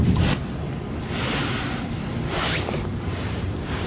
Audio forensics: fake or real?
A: real